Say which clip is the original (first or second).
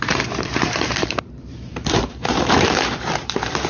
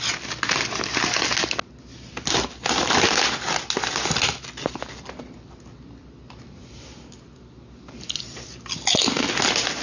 second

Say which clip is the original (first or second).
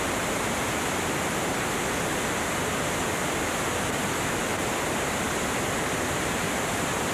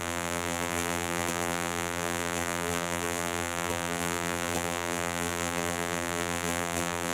first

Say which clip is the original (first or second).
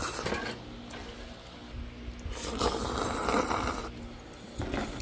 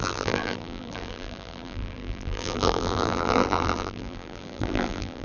first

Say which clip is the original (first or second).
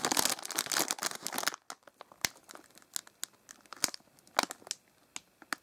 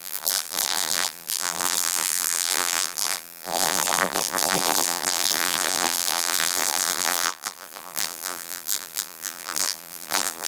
first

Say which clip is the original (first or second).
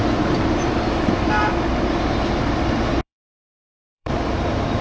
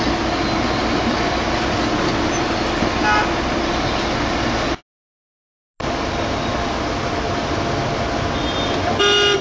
second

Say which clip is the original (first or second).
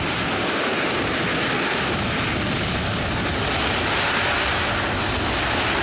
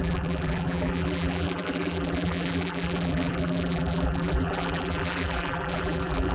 first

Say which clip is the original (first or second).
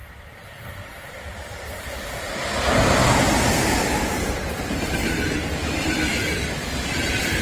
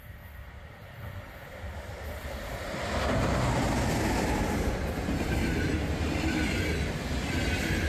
second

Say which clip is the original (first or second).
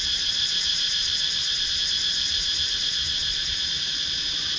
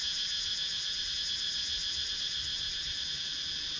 second